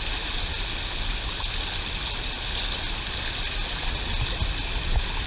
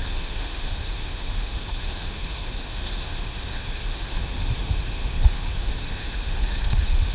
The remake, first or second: second